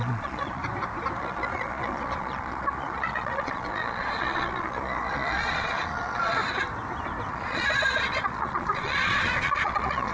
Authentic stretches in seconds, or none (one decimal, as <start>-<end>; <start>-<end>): 0.6-1.2; 6.4-7.3